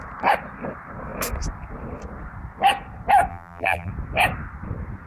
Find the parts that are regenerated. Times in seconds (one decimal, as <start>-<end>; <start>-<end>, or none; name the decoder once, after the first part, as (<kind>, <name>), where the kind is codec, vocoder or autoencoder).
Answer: 3.3-3.9 (vocoder, BigVGAN v2)